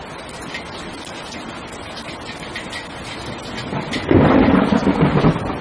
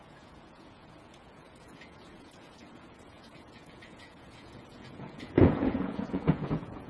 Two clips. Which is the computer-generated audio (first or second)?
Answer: second